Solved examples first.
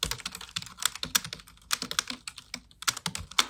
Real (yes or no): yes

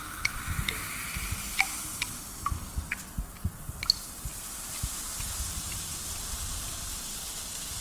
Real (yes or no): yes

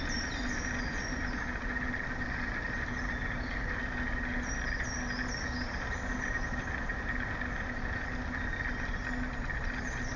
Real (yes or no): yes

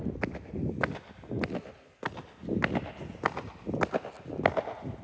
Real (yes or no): yes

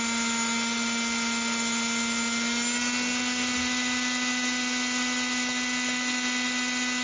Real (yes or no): yes